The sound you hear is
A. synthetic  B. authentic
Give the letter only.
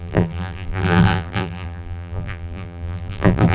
A